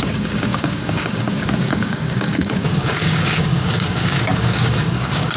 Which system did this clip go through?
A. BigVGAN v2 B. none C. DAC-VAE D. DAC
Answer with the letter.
D